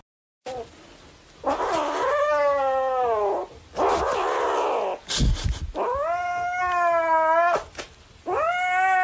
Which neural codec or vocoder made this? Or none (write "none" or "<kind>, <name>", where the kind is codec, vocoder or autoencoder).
none